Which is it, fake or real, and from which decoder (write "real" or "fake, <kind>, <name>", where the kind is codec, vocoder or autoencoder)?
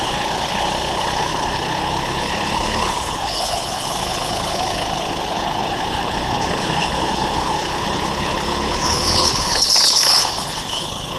fake, codec, HILCodec